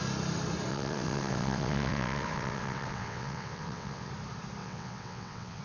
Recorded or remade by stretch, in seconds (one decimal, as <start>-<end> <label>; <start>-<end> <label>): 0.0-0.7 recorded; 0.7-4.1 remade; 4.1-4.6 recorded; 4.6-5.6 remade